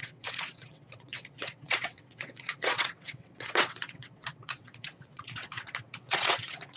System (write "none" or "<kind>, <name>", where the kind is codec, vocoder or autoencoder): vocoder, WaveNeXt